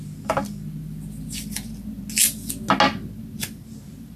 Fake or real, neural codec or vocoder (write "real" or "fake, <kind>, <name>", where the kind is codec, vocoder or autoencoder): real